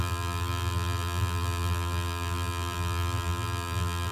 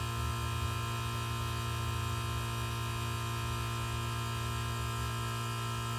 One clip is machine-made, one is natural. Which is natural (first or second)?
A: second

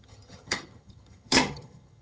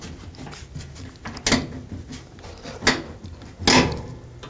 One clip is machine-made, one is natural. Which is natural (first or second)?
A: second